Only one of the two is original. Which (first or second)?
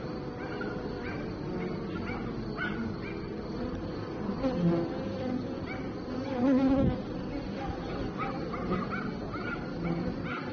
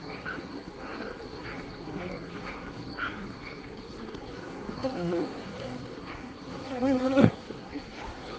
first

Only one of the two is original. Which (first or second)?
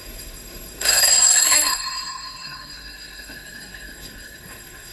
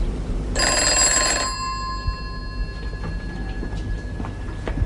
second